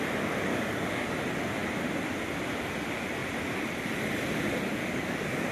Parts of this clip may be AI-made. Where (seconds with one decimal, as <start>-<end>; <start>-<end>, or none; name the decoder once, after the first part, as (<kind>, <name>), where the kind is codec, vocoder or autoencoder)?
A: 0.5-1.1 (codec, DAC); 4.8-5.5